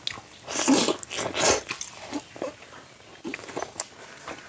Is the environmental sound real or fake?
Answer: real